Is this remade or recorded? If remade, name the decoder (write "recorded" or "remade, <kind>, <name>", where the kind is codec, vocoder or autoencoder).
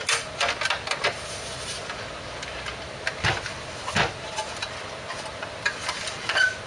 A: recorded